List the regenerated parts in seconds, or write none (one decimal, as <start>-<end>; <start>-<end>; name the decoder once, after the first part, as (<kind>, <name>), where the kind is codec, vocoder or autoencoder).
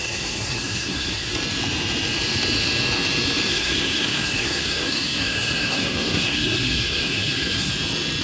0.0-1.3 (codec, SNAC); 3.5-7.7